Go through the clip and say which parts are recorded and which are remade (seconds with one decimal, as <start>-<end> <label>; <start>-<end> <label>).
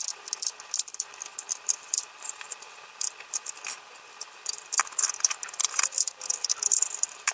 0.0-1.3 recorded; 1.3-4.8 remade; 4.8-5.6 recorded; 5.6-6.1 remade; 6.1-7.3 recorded